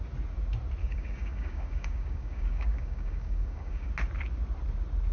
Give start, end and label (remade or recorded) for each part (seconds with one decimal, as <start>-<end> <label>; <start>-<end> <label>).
0.0-0.8 recorded; 0.8-3.9 remade; 3.9-5.1 recorded

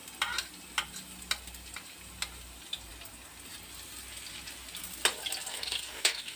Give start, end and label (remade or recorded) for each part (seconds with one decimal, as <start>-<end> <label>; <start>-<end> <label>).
0.0-5.5 recorded; 5.5-6.4 remade

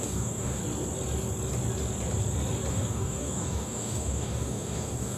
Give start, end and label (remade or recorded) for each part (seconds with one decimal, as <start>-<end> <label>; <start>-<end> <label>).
0.0-0.6 remade; 0.6-2.7 recorded; 2.7-5.2 remade

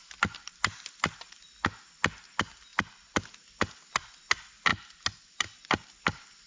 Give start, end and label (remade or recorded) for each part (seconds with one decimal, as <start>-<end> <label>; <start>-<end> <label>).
0.0-6.5 recorded

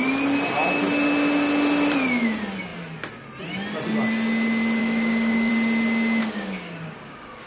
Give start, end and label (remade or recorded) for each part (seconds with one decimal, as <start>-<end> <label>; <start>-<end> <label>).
0.0-4.8 recorded; 4.8-5.5 remade; 5.5-6.2 recorded; 6.2-7.5 remade

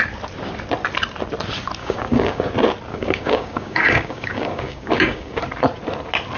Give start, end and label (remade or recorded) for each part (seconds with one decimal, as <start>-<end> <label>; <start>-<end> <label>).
0.0-1.8 recorded; 1.8-2.5 remade; 2.5-2.9 recorded; 2.9-5.4 remade; 5.4-6.4 recorded